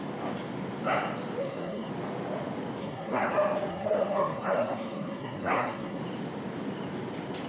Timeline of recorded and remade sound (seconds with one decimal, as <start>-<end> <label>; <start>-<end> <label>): 0.0-1.4 recorded; 1.4-1.9 remade; 1.9-2.8 recorded; 2.8-3.3 remade; 3.3-3.7 recorded; 3.7-6.0 remade; 6.0-7.5 recorded